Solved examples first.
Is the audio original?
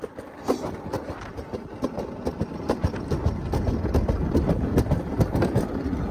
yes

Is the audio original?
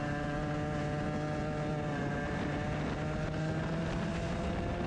yes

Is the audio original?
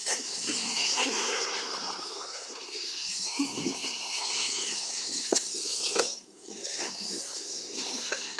no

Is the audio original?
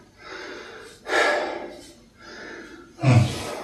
yes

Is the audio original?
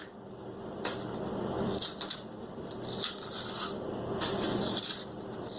yes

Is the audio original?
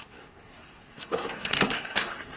no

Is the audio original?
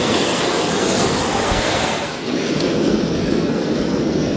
no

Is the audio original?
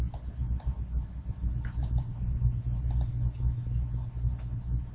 yes